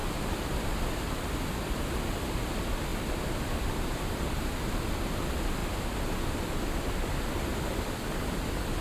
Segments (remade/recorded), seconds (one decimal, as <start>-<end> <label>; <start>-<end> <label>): 0.0-1.0 remade; 1.0-2.9 recorded; 2.9-4.4 remade; 4.4-5.6 recorded; 5.6-6.1 remade; 6.1-7.5 recorded; 7.5-8.1 remade; 8.1-8.8 recorded